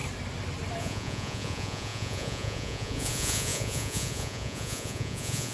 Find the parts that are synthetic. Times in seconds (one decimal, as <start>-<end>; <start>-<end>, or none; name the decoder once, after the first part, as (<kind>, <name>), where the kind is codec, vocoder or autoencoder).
0.8-5.5 (vocoder, Vocos)